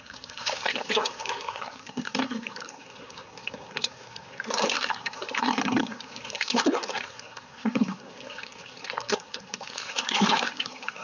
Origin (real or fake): fake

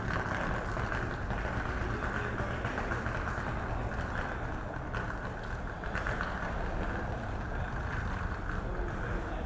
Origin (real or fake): real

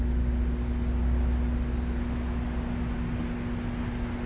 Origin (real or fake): real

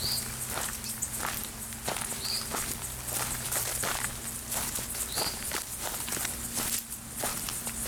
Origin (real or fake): real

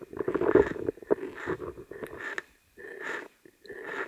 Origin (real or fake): real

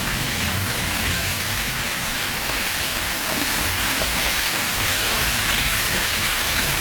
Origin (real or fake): fake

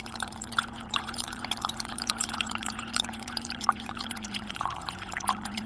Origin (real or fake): fake